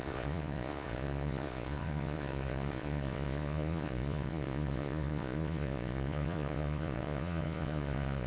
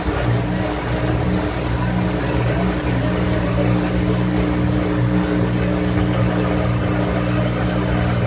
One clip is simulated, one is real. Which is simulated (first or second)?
first